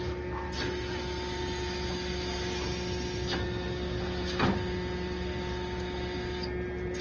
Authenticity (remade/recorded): recorded